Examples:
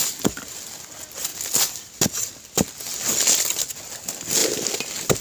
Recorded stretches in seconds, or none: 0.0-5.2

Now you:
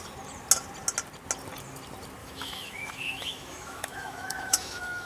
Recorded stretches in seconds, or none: 0.0-2.2

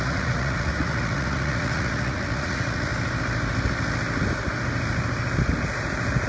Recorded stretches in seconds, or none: 2.9-6.3

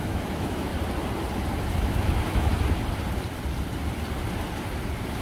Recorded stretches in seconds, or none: 0.7-1.7; 2.5-5.2